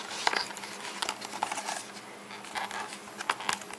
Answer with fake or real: real